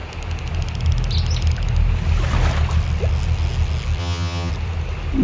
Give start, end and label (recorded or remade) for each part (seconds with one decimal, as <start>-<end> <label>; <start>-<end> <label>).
0.0-4.0 recorded; 4.0-4.5 remade; 4.5-5.2 recorded